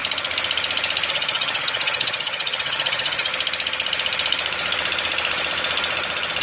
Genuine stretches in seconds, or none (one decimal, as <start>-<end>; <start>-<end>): 0.0-1.1; 3.3-6.4